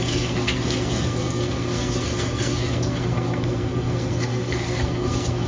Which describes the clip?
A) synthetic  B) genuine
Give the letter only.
A